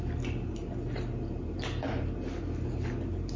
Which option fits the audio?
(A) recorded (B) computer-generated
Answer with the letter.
A